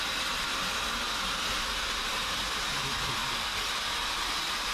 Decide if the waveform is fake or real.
real